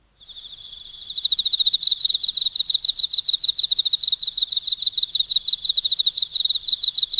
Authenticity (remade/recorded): remade